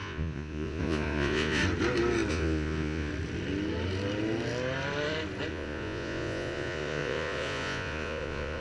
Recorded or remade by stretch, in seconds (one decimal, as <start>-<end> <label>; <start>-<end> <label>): 0.0-1.6 remade; 1.6-2.3 recorded; 2.3-3.1 remade; 3.1-5.5 recorded; 5.5-8.6 remade